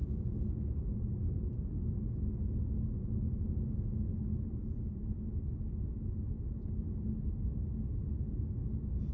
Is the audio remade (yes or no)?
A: no